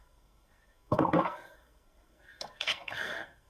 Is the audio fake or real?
fake